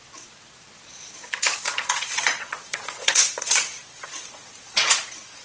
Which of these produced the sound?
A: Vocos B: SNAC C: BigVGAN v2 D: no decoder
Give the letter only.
A